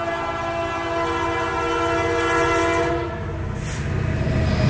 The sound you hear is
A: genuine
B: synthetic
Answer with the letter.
A